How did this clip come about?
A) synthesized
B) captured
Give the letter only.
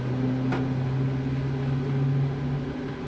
B